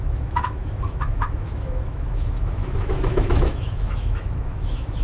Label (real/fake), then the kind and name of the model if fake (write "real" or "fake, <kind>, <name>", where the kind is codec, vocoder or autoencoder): fake, autoencoder, DAC-VAE